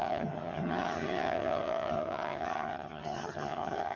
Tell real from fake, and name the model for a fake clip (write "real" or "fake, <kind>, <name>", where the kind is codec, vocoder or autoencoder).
fake, vocoder, HiFi-GAN